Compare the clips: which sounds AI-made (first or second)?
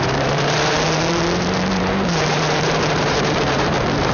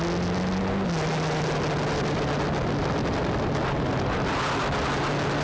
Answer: first